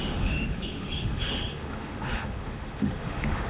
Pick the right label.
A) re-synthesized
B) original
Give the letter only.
A